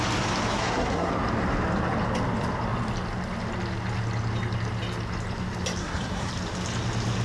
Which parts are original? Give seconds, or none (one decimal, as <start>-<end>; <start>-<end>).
0.0-0.5; 1.1-5.8; 6.3-7.2